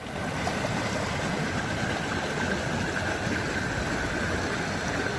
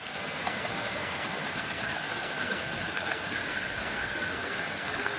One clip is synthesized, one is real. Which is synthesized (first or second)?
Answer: second